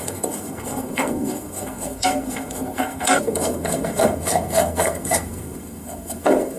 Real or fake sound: fake